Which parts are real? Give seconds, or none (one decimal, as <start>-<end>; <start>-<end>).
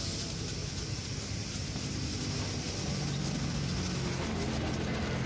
0.0-0.6; 2.2-5.3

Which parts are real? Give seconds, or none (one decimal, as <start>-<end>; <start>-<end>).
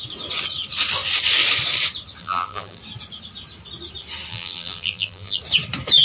0.0-2.2; 2.8-4.3; 5.4-6.0